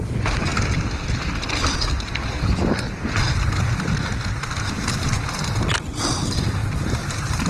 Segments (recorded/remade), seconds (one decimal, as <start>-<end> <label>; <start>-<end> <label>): 0.0-6.6 recorded; 6.6-7.5 remade